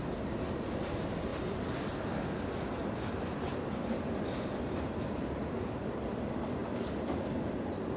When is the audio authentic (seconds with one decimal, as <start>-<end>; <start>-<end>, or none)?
0.0-1.3; 2.0-2.8; 5.8-8.0